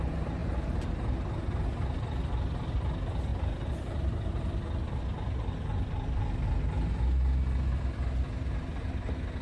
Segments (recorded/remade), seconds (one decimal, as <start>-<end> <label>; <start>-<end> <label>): 0.0-3.3 recorded; 3.3-4.3 remade; 4.3-9.4 recorded